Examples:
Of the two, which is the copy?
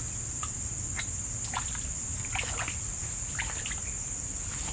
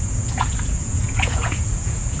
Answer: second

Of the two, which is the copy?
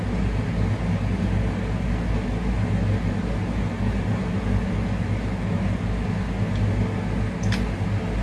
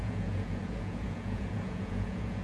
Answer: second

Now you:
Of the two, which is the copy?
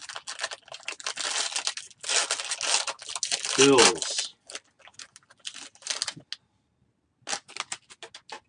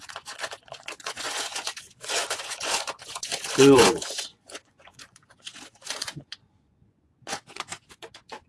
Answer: second